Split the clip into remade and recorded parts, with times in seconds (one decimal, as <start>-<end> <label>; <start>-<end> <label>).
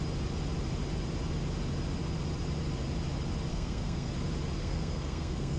0.0-3.5 recorded; 3.5-4.1 remade; 4.1-4.6 recorded; 4.6-5.6 remade